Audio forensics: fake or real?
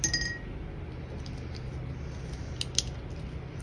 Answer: real